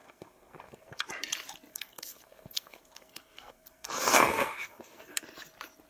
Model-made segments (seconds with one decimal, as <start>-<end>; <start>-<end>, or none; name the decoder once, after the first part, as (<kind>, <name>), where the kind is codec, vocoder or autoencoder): 0.0-1.1 (codec, SNAC); 1.7-5.2